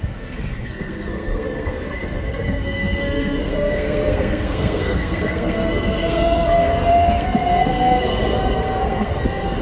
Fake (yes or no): yes